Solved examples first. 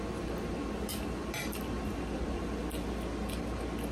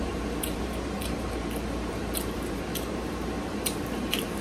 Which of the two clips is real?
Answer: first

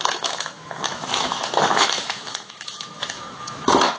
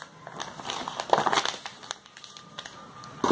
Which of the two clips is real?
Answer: second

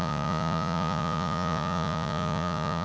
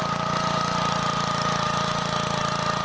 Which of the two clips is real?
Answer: second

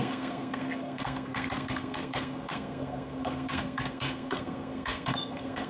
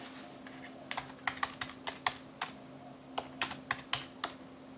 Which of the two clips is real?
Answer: second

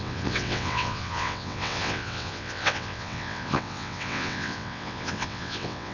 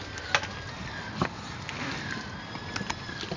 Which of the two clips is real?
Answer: second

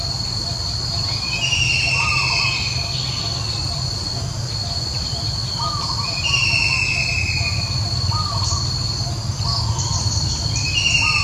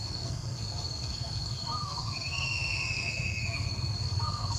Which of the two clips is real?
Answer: first